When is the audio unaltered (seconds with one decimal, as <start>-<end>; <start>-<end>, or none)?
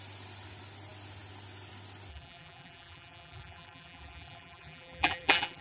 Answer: 0.0-2.1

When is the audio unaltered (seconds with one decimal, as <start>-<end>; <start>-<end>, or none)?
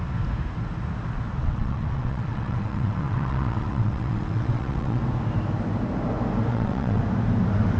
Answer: 0.0-1.4; 5.0-6.5; 7.0-7.8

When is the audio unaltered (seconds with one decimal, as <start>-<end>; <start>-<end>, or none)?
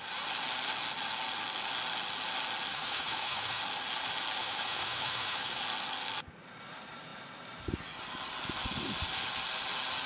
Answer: 0.0-2.7; 3.6-4.4; 5.6-10.1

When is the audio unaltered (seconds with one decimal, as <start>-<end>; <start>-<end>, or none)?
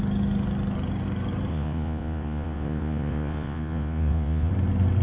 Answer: 0.0-1.5; 4.5-5.0